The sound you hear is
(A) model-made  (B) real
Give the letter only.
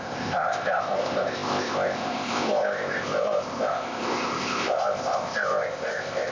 A